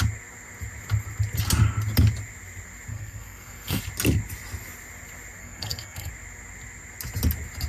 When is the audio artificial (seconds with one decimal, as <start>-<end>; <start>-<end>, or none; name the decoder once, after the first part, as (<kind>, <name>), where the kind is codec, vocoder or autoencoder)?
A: 2.9-3.8 (codec, SNAC); 5.4-6.1